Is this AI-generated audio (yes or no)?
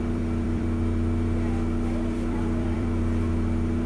yes